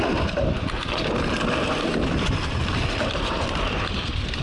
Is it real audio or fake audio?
real